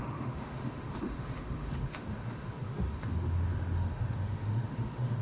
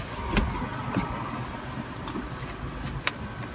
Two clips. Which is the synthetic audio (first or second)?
first